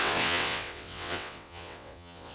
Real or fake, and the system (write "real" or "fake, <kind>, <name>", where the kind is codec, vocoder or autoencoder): fake, vocoder, WaveNeXt